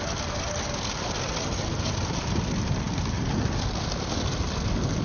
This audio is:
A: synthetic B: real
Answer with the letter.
B